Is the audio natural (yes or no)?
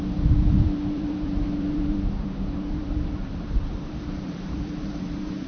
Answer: no